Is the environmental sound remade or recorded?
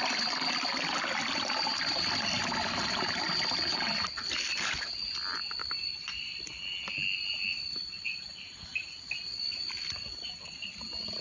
recorded